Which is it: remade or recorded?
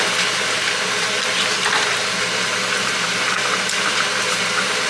recorded